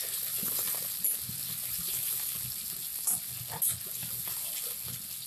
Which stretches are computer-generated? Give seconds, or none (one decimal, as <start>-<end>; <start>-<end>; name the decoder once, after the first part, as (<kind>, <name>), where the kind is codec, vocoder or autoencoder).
none